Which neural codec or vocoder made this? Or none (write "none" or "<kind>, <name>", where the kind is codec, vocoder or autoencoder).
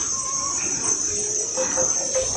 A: none